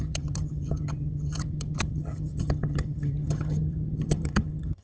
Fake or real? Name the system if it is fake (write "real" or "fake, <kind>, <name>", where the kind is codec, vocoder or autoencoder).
fake, vocoder, HiFi-GAN